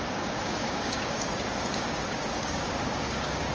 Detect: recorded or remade remade